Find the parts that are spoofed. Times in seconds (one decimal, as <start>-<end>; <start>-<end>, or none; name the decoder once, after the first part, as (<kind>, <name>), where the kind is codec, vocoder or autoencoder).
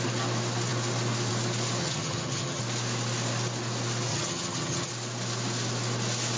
1.8-2.6 (vocoder, HiFi-GAN); 4.1-4.9